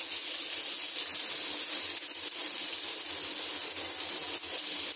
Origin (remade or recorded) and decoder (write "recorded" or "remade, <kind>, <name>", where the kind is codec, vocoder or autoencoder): recorded